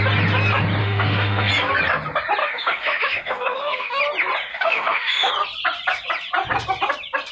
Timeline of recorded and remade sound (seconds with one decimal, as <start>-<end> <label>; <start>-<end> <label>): 0.0-0.8 recorded; 0.8-1.5 remade; 1.5-2.4 recorded; 2.4-4.0 remade; 4.0-4.5 recorded; 4.5-5.3 remade; 5.3-7.3 recorded